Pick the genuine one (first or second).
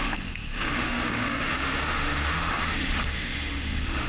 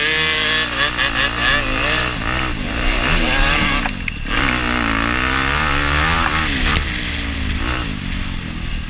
second